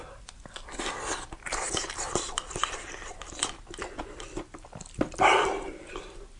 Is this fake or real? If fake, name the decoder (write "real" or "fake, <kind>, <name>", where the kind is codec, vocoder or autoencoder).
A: real